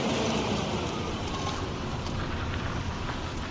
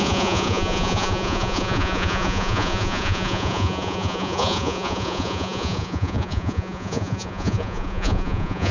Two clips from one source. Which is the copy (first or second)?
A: second